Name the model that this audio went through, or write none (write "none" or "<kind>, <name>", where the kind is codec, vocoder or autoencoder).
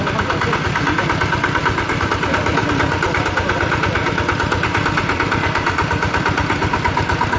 none